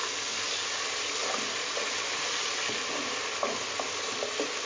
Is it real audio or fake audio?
real